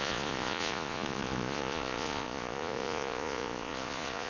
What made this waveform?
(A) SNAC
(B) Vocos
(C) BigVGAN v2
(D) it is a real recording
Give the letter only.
B